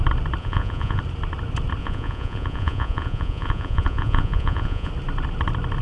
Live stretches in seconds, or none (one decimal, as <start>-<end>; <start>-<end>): 0.0-0.4; 1.0-1.8; 4.9-5.8